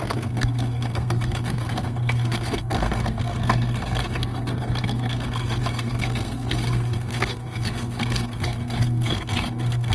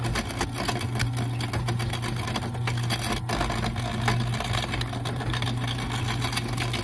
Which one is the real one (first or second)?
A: second